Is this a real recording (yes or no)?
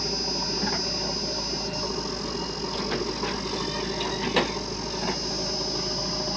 yes